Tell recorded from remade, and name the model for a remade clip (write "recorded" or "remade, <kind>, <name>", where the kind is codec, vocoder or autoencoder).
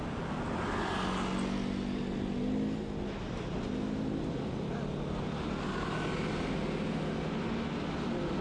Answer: recorded